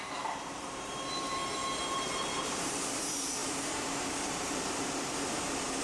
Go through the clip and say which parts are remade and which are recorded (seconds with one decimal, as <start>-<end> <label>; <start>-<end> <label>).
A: 0.0-1.4 remade; 1.4-1.9 recorded; 1.9-5.8 remade

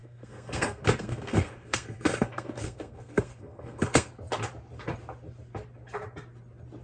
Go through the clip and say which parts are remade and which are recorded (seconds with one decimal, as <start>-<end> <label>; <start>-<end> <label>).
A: 0.0-4.1 remade; 4.1-6.8 recorded

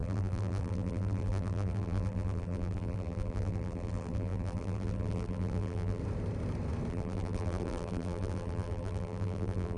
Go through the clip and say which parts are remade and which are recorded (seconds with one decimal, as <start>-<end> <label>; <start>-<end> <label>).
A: 0.0-6.0 remade; 6.0-6.9 recorded; 6.9-9.8 remade

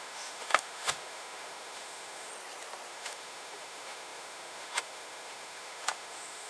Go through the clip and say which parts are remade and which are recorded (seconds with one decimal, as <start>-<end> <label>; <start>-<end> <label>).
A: 0.0-2.3 remade; 2.3-2.9 recorded; 2.9-6.5 remade